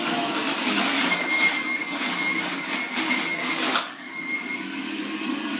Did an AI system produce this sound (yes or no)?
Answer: yes